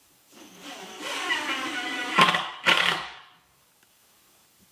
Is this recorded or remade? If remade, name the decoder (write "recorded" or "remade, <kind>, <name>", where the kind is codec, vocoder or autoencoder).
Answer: remade, codec, DAC